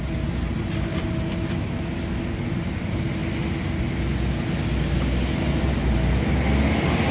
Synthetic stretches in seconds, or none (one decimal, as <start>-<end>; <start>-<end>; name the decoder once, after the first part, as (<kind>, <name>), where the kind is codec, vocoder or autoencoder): none